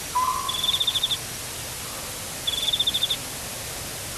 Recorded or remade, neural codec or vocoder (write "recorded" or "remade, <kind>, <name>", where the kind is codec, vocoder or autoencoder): recorded